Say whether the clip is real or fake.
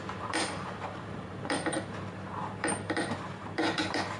fake